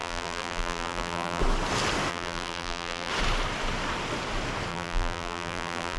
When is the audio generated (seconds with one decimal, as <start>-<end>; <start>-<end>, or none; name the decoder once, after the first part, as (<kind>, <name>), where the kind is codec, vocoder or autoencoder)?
0.0-1.4 (vocoder, BigVGAN v2); 2.1-3.1; 4.7-6.0